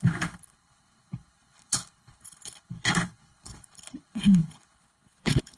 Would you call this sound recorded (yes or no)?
no